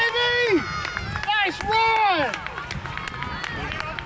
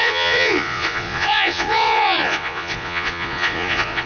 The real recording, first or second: first